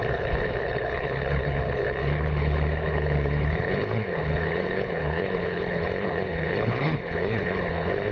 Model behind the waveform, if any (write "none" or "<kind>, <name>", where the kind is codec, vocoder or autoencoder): codec, HILCodec